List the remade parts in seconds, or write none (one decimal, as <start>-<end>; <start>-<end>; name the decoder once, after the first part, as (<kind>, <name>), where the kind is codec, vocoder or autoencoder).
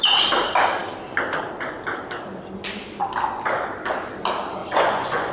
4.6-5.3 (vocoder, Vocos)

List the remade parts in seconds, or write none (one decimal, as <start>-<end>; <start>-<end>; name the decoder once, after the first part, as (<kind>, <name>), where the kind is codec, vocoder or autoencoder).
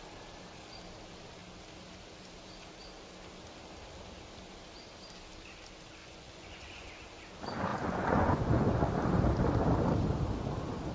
6.0-6.9 (vocoder, Vocos); 7.7-8.9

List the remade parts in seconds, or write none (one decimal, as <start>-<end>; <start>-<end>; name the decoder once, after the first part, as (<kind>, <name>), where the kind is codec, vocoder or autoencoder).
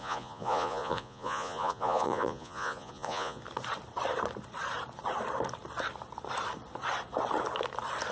0.0-3.4 (vocoder, Vocos)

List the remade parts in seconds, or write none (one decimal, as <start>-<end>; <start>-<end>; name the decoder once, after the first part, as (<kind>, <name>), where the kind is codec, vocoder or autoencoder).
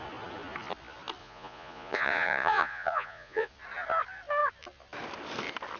1.2-3.5 (vocoder, Vocos)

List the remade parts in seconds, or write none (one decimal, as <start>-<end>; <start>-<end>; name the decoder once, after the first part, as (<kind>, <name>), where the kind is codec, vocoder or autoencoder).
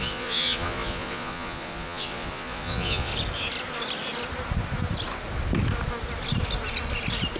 0.0-3.1 (vocoder, Vocos)